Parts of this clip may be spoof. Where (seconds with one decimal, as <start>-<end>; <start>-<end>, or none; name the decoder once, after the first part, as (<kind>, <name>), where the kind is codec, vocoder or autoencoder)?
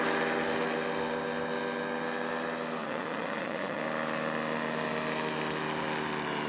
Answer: 2.8-3.8 (vocoder, Vocos)